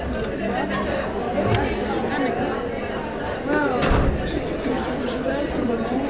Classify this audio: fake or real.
real